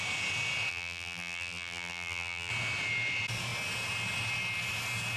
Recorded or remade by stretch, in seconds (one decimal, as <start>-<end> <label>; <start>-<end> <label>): 0.0-0.7 recorded; 0.7-2.5 remade; 2.5-5.2 recorded